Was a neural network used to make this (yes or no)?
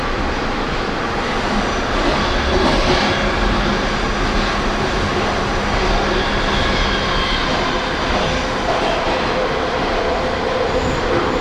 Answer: no